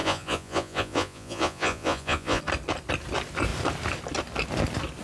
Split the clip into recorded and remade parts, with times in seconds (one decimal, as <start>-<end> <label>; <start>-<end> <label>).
0.0-2.4 remade; 2.4-5.0 recorded